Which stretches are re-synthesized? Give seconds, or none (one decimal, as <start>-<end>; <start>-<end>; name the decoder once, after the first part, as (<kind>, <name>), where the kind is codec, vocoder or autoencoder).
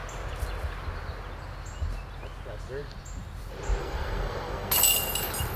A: 3.8-4.7 (codec, SNAC)